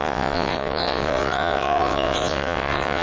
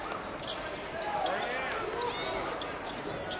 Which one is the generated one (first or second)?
first